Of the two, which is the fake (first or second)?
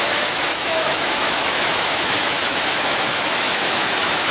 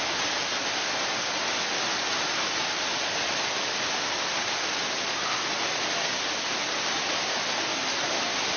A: first